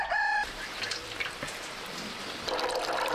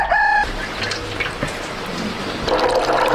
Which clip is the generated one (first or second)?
first